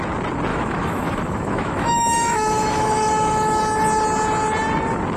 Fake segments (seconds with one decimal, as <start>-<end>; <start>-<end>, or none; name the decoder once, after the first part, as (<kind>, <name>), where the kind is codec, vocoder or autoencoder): 0.5-3.6 (autoencoder, DAC-VAE)

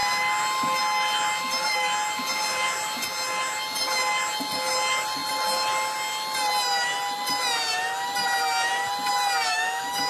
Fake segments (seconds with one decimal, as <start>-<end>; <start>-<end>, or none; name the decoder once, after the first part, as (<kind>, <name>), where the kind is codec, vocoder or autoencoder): 9.5-10.1 (autoencoder, DAC-VAE)

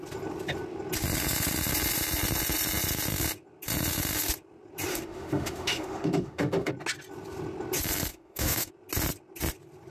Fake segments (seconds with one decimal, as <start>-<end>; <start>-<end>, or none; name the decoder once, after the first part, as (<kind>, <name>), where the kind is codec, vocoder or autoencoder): 4.9-6.7 (autoencoder, DAC-VAE); 8.1-8.7

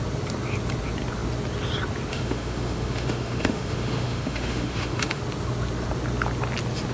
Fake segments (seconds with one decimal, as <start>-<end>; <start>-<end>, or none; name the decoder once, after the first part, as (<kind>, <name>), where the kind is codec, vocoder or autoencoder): 2.1-5.2 (autoencoder, DAC-VAE)

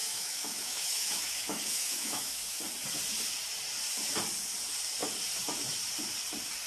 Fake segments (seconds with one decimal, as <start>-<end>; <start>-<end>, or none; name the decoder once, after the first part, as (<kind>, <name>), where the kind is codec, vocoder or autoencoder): 0.0-2.6 (autoencoder, DAC-VAE)